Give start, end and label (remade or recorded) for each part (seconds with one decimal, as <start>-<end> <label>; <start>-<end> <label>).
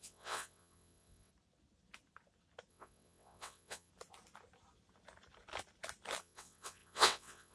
0.0-1.3 remade; 1.3-2.7 recorded; 2.7-3.9 remade; 3.9-6.2 recorded; 6.2-7.5 remade